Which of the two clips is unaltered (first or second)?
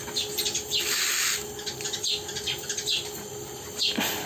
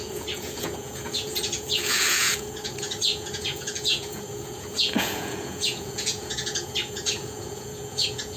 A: first